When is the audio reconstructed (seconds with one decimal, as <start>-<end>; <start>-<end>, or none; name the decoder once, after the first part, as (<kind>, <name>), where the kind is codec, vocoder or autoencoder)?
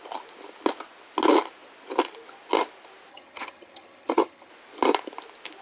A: 3.1-4.5 (vocoder, HiFi-GAN)